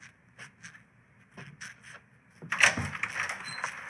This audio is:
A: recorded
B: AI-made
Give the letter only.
A